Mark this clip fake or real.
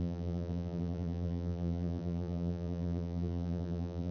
fake